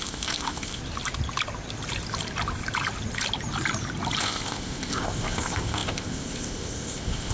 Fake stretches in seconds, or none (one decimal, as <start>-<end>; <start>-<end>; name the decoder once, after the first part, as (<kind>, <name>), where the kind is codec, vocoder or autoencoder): 0.0-0.8 (codec, ZipCodec); 4.2-7.3